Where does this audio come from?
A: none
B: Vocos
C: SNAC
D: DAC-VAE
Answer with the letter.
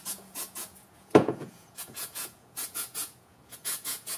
B